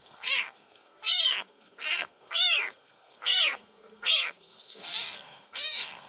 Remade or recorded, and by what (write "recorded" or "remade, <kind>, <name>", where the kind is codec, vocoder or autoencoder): remade, codec, SNAC